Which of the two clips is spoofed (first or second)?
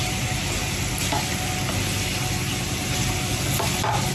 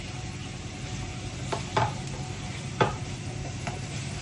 second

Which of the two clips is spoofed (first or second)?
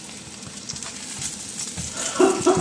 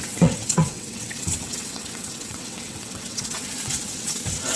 second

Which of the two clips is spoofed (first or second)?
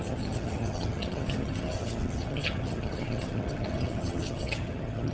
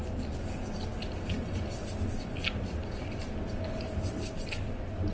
first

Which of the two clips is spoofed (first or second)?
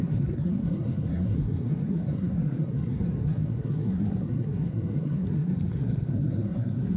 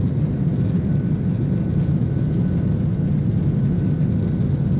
first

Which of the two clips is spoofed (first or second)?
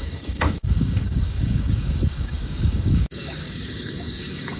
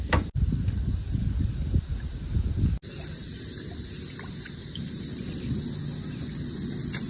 first